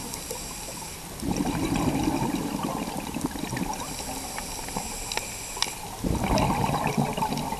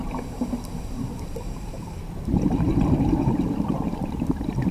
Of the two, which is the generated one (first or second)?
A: second